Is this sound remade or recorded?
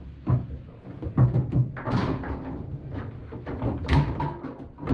recorded